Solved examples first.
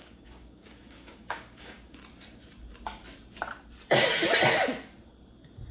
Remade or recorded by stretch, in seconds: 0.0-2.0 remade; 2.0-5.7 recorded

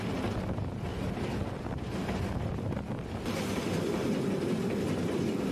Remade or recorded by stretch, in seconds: 0.0-5.5 recorded

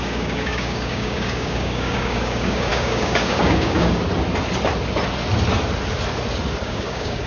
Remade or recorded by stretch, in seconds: 0.0-4.0 remade; 4.0-6.6 recorded; 6.6-7.3 remade

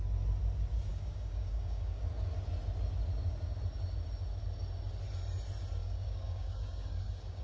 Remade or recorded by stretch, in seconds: 0.0-0.9 recorded; 0.9-2.0 remade; 2.0-5.8 recorded; 5.8-7.4 remade